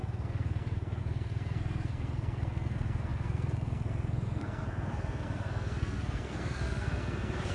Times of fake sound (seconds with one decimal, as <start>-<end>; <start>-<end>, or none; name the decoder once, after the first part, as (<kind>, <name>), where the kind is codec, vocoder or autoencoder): 0.0-7.5 (codec, SNAC)